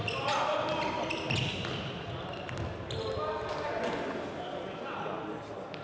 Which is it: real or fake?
real